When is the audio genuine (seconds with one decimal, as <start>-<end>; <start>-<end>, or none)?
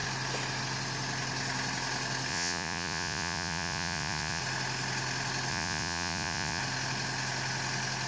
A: 0.0-2.3; 4.4-5.5; 6.6-8.1